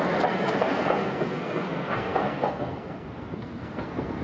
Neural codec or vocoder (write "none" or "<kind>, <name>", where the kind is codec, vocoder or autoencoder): codec, SNAC